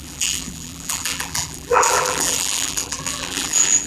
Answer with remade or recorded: remade